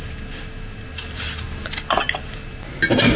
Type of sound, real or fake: real